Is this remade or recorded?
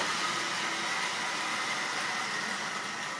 recorded